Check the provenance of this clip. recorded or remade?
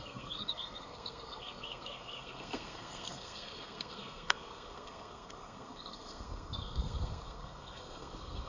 remade